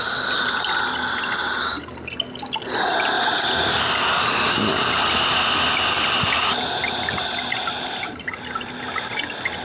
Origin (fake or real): real